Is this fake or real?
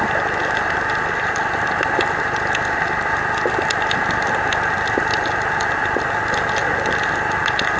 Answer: real